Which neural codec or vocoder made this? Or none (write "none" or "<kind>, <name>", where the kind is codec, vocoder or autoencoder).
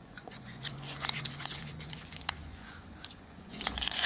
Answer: vocoder, Vocos